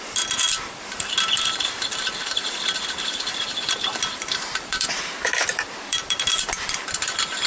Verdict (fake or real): fake